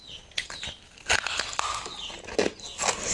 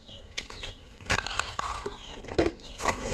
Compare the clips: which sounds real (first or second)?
first